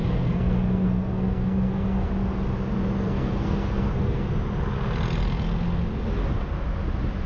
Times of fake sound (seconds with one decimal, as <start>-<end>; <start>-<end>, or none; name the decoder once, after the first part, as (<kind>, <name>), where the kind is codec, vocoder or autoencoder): 0.0-2.1 (codec, SNAC); 3.0-4.3